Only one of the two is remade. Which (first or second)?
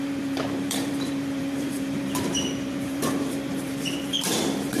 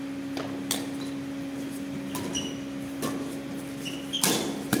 first